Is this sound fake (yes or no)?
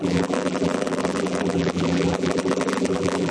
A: yes